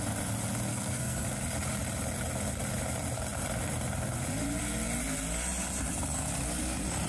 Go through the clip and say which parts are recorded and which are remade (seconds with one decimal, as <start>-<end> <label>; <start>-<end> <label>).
0.0-0.7 recorded; 0.7-1.3 remade; 1.3-7.1 recorded